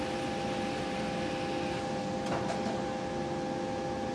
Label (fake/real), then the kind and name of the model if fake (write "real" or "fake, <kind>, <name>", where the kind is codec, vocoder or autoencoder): real